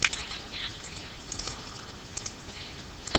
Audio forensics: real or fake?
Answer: real